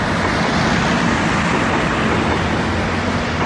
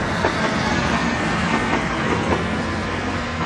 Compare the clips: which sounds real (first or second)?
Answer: first